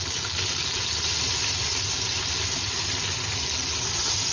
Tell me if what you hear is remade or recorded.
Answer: recorded